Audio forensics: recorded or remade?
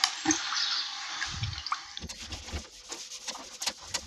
recorded